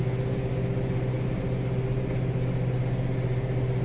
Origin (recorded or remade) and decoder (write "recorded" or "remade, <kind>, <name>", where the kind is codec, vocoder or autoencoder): recorded